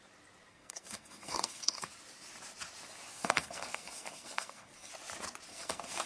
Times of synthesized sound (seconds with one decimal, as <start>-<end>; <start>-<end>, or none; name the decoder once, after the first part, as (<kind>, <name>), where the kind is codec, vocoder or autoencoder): 0.5-1.9 (codec, SNAC); 3.1-4.9; 5.5-6.1